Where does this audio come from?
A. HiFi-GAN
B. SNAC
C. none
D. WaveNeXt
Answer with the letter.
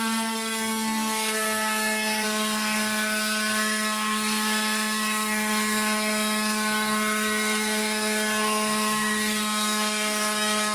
B